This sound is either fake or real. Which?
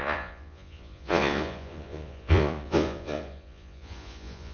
fake